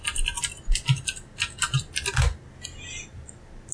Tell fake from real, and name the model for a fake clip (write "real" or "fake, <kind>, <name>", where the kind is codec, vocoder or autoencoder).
real